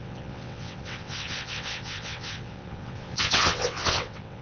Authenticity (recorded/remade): remade